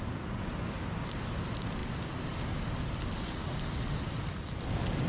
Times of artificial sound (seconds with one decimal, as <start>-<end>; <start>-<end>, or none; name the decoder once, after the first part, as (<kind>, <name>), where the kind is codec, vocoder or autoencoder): none